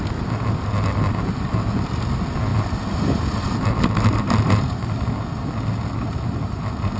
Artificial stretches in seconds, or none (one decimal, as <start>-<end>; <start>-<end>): none